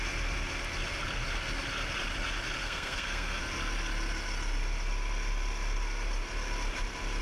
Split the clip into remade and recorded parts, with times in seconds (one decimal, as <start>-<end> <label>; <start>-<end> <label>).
0.0-2.6 recorded; 2.6-3.4 remade; 3.4-7.2 recorded